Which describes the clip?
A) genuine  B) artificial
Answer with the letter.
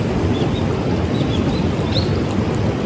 A